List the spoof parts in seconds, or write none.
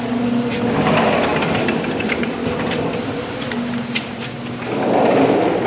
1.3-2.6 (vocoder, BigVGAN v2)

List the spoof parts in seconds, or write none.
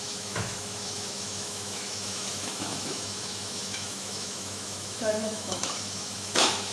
0.0-6.7 (autoencoder, DAC-VAE)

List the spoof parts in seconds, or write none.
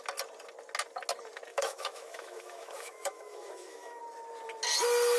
1.5-4.0 (autoencoder, DAC-VAE)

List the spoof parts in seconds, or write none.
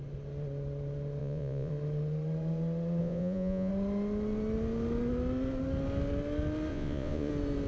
1.2-1.7 (vocoder, Vocos); 3.0-3.7; 6.7-7.3